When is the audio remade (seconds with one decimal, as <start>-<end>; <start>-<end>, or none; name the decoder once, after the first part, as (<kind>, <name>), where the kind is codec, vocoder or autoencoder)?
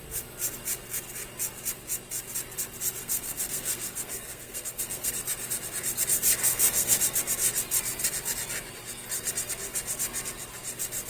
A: 3.0-5.1 (codec, SNAC); 6.4-7.0